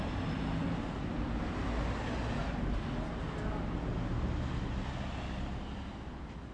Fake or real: real